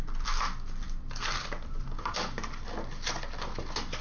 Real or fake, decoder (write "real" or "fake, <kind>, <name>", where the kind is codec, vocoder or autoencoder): real